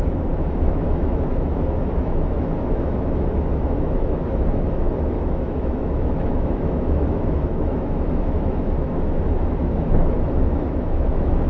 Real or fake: fake